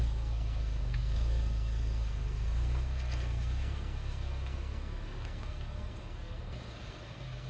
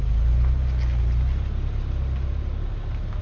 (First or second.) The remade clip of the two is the first